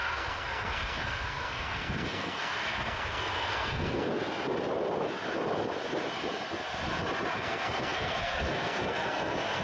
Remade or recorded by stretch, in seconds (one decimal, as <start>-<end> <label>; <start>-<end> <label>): 0.0-4.1 remade; 4.1-7.3 recorded; 7.3-9.6 remade